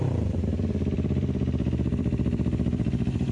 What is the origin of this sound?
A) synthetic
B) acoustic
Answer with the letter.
A